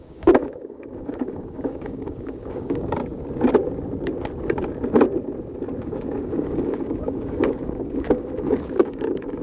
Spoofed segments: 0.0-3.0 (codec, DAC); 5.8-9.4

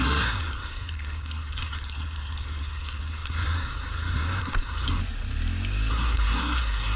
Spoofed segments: 0.0-5.0 (codec, SNAC); 5.9-7.0

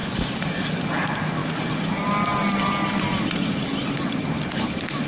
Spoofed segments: none

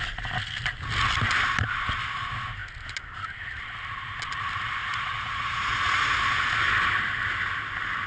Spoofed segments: 4.8-6.2 (vocoder, Vocos)

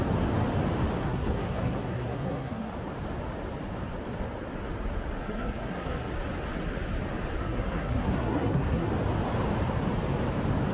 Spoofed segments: 1.0-2.7 (codec, SNAC); 5.2-6.1; 7.4-8.9

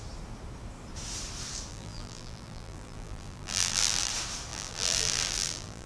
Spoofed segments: 1.7-4.1 (vocoder, BigVGAN v2); 4.5-5.9